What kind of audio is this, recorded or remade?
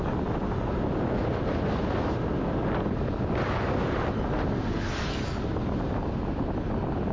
recorded